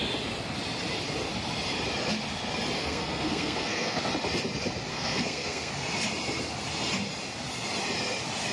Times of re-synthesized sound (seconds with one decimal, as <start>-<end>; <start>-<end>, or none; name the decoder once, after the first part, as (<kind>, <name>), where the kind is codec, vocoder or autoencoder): 2.8-4.0 (codec, SNAC); 4.9-5.7